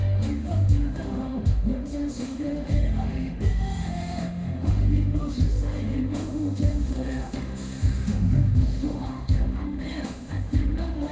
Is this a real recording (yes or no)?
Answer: no